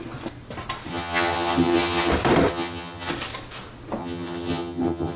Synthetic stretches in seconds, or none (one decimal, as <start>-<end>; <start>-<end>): 0.9-2.1; 2.5-3.1; 4.0-5.2